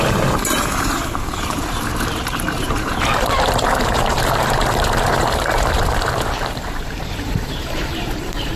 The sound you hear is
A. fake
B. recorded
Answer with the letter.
A